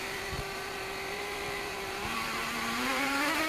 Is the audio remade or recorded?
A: remade